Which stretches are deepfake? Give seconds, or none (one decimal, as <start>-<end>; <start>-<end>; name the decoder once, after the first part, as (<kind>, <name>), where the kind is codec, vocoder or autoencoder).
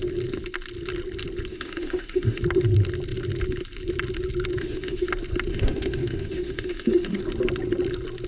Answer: 1.5-2.4 (autoencoder, DAC-VAE); 4.6-5.1; 5.5-7.2